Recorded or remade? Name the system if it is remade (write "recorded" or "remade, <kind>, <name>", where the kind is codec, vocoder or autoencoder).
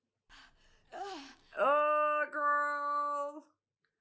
recorded